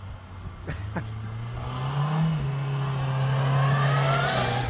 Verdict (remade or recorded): recorded